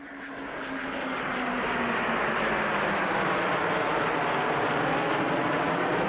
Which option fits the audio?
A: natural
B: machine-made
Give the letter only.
A